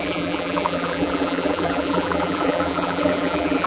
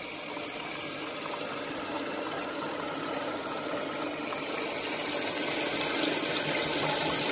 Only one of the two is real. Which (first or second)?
second